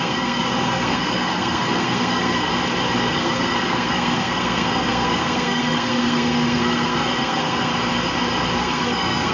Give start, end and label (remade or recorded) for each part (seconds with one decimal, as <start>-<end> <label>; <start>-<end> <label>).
0.0-2.5 remade; 2.5-3.0 recorded; 3.0-7.7 remade; 7.7-8.6 recorded; 8.6-9.3 remade